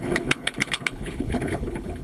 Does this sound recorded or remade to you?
remade